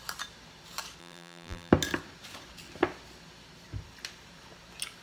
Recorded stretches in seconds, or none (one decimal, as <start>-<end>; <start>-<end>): 0.0-1.0; 1.7-5.0